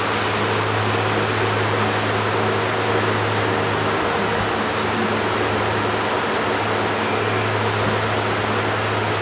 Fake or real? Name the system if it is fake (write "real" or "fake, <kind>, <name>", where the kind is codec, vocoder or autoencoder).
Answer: real